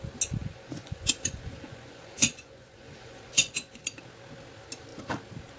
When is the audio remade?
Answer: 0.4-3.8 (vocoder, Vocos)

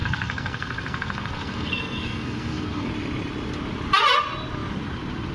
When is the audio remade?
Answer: 0.0-2.9 (codec, SNAC)

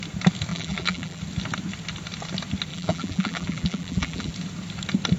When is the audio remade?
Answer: 0.5-1.2 (vocoder, BigVGAN v2); 2.7-4.3

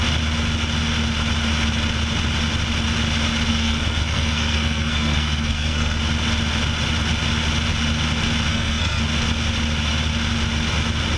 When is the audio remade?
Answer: 3.5-6.0 (codec, SNAC); 8.5-9.0

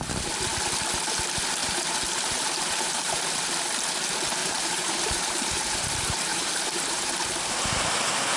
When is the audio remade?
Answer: 1.6-3.2 (vocoder, BigVGAN v2); 4.4-7.4

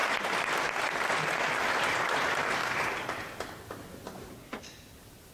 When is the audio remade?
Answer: none

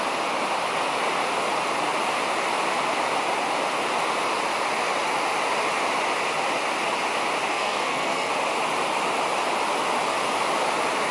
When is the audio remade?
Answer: 7.5-8.3 (codec, SNAC)

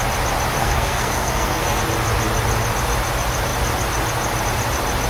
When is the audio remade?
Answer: 0.6-1.8 (codec, SNAC)